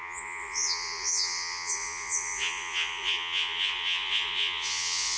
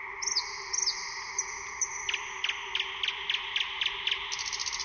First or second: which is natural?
second